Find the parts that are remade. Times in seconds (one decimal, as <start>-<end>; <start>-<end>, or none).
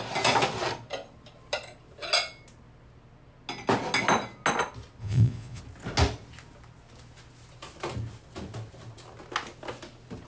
5.0-5.6